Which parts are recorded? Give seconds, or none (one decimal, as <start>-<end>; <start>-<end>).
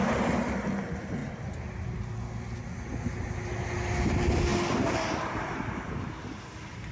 0.0-6.9